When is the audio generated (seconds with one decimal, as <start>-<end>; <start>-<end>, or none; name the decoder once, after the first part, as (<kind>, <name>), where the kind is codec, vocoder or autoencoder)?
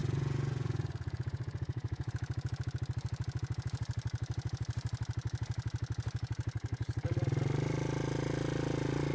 0.0-2.1 (vocoder, Vocos)